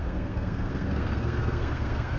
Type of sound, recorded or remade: remade